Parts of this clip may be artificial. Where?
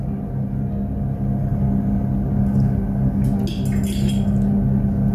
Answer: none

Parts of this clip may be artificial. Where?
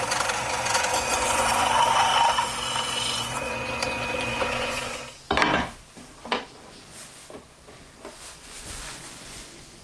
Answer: 0.0-2.1; 2.8-5.0; 6.6-9.8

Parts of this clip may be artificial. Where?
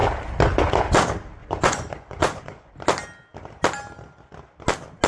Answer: 1.4-2.7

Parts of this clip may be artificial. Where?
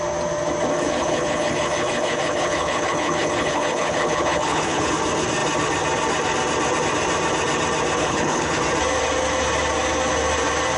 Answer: 0.7-4.9; 8.0-8.6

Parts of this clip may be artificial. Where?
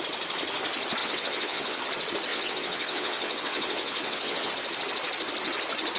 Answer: 1.0-1.8; 2.3-4.5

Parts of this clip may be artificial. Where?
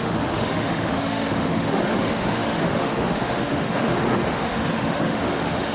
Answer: 0.0-5.7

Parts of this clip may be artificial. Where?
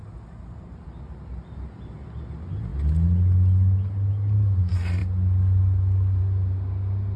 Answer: none